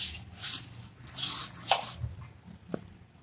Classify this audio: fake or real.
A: real